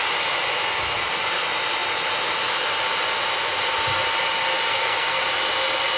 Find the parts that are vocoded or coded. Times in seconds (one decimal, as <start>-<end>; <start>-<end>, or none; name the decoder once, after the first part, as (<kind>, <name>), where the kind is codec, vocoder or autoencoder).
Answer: 4.7-5.2 (codec, SNAC)